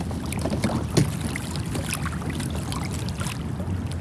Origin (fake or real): real